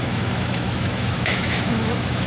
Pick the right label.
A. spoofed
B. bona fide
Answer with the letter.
A